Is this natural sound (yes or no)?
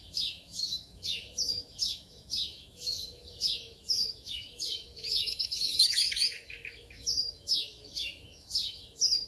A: no